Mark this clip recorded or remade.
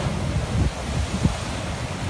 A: recorded